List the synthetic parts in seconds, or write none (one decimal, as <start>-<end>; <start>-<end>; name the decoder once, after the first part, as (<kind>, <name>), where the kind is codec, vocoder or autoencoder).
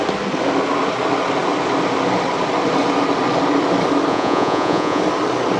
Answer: 4.1-5.0 (vocoder, Vocos)